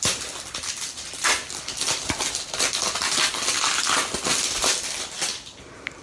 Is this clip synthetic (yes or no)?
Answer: no